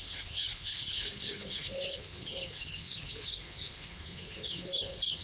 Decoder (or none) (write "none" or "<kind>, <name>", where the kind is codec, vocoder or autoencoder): codec, HILCodec